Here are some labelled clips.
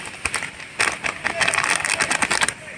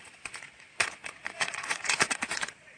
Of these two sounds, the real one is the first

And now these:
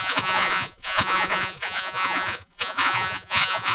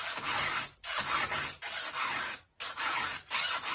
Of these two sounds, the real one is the second